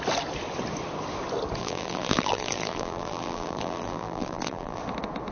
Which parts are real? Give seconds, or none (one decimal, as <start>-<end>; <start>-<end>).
0.0-1.6; 4.8-5.3